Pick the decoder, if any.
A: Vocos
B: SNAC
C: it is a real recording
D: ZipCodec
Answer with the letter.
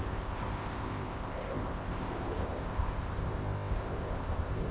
D